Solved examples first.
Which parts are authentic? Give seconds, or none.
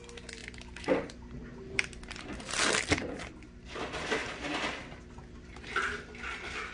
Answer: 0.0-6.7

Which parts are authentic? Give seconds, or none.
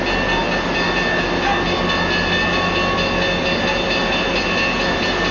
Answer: 0.0-5.3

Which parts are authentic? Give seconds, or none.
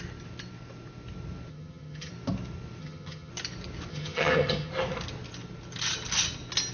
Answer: 0.0-1.5; 2.1-2.8; 3.3-3.9; 4.7-6.7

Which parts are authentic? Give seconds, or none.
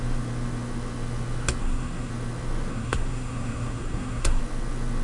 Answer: 0.0-1.6; 2.1-2.7; 4.4-5.0